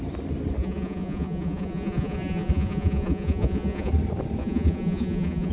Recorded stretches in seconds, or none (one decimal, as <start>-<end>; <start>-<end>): 0.0-0.6; 3.9-4.4